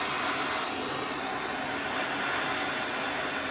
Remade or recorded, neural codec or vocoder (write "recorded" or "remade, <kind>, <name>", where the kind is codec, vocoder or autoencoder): recorded